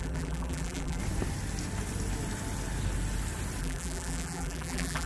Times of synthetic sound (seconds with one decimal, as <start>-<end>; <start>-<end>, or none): 0.0-1.0; 3.6-5.1